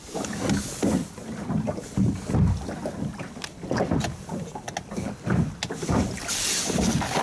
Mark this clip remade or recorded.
recorded